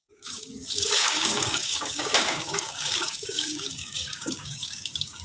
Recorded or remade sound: remade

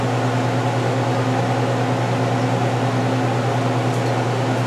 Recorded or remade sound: recorded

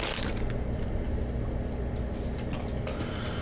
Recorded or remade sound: recorded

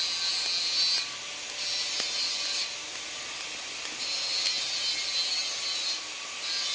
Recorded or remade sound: recorded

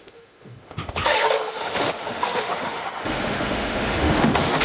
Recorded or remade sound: remade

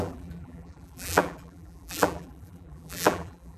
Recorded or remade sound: remade